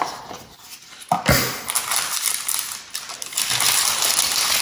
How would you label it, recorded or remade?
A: recorded